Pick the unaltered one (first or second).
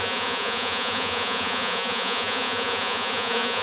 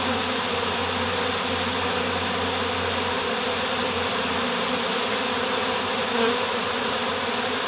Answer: second